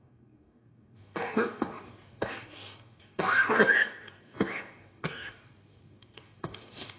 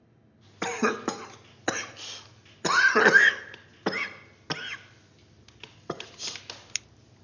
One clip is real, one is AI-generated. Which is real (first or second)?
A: second